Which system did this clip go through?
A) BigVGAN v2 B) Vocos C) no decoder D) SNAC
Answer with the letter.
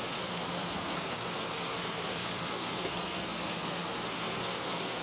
D